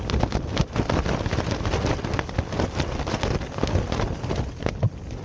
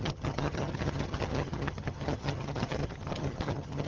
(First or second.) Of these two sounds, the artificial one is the second